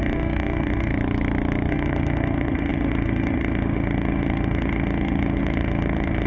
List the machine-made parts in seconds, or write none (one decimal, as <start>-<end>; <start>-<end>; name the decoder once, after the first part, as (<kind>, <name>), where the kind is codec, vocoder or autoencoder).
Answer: 0.0-0.9 (autoencoder, DAC-VAE); 1.7-6.3